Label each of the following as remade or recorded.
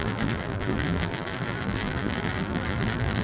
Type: remade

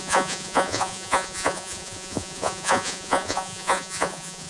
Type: remade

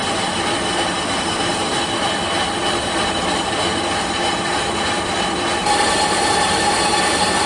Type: remade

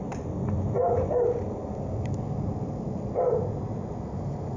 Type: recorded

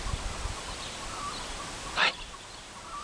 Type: recorded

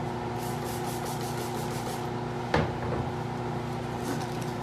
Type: recorded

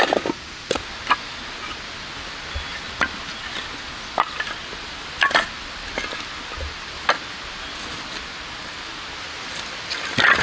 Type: recorded